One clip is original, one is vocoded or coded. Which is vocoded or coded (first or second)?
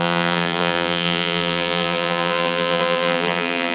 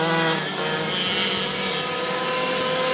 first